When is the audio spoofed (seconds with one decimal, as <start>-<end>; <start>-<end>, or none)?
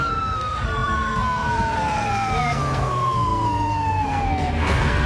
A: 0.0-5.1